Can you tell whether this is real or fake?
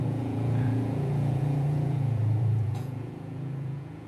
fake